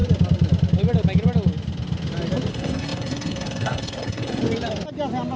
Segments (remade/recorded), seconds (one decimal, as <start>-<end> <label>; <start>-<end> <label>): 0.0-2.5 recorded; 2.5-4.4 remade; 4.4-5.4 recorded